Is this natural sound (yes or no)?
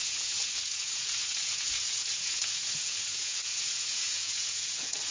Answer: no